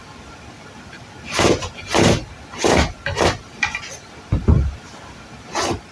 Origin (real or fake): real